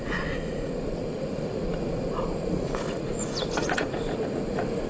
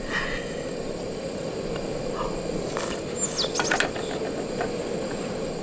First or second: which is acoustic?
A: second